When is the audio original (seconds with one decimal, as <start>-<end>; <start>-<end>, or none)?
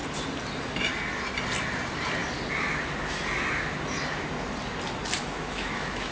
0.0-5.2